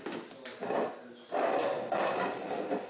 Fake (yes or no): no